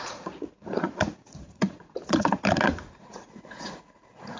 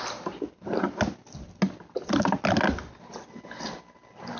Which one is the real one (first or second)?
second